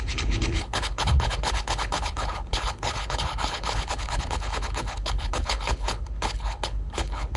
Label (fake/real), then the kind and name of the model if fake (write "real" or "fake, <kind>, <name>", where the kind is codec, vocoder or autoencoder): fake, codec, HILCodec